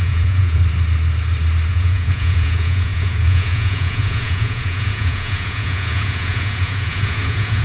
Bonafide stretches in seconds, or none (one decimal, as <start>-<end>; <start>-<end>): 0.6-1.7